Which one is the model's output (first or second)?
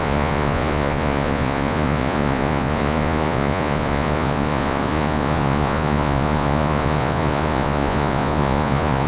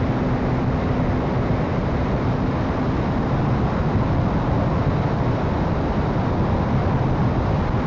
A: first